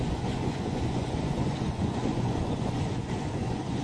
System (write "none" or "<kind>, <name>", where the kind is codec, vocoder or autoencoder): vocoder, Vocos